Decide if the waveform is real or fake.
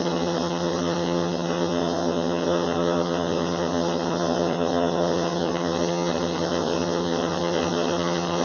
fake